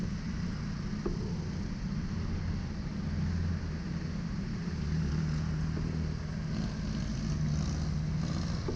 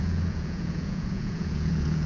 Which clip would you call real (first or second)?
first